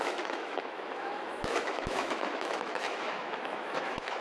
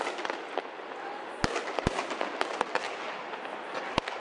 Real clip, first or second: second